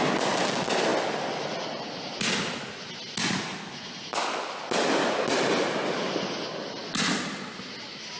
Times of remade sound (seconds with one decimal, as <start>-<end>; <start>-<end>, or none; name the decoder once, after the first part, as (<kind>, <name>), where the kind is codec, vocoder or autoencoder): none